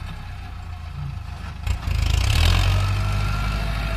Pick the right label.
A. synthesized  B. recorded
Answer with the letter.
B